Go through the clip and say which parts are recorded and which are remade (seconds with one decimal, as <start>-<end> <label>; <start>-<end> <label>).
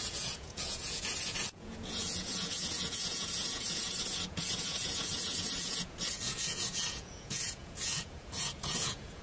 0.0-9.2 remade